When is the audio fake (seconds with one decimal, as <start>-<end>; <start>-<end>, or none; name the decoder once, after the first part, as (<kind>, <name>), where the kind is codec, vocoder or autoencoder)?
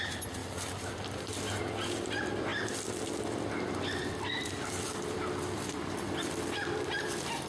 0.0-2.5 (vocoder, BigVGAN v2); 3.5-7.5